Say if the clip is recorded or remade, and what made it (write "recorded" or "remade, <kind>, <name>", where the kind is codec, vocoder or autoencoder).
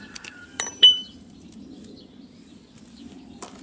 remade, vocoder, BigVGAN v2